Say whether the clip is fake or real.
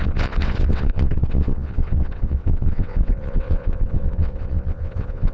fake